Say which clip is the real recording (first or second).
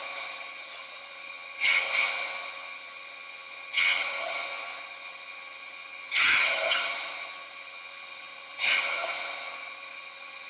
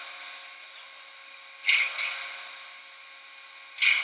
second